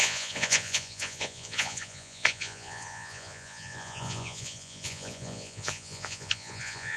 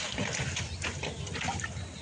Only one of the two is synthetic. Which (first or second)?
first